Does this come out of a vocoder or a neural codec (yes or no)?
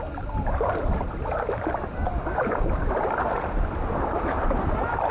no